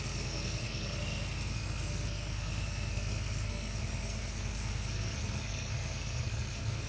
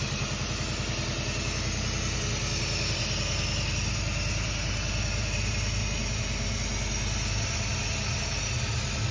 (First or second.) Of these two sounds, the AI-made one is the first